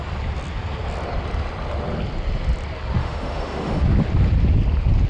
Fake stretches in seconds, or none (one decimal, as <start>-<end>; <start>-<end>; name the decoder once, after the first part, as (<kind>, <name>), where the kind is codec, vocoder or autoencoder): 3.0-3.8 (autoencoder, DAC-VAE)